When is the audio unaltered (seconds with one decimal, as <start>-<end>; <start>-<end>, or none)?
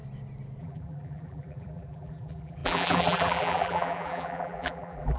0.0-0.6